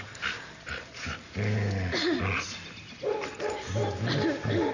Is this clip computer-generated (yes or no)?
no